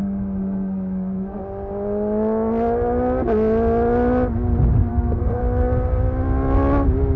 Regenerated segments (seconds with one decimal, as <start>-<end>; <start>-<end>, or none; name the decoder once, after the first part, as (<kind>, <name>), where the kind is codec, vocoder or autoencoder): 0.0-1.4 (codec, SNAC); 4.9-5.4